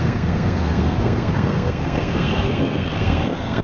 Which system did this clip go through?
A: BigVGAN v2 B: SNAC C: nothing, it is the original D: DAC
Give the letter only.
B